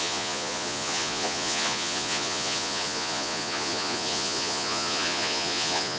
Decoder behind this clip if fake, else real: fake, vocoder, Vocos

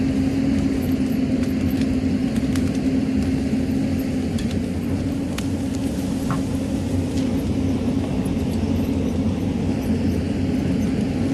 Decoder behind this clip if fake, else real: real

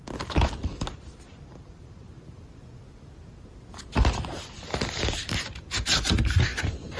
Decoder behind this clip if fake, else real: real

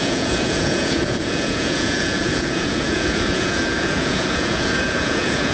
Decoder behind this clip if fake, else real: fake, vocoder, Vocos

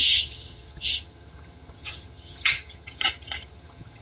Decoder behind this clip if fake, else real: fake, vocoder, HiFi-GAN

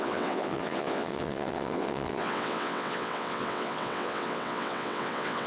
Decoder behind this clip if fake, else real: fake, vocoder, WaveNeXt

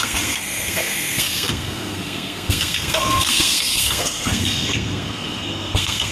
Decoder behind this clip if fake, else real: fake, codec, SNAC